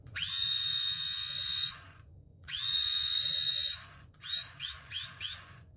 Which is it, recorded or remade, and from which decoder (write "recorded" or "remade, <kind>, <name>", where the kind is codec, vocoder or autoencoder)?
remade, vocoder, Vocos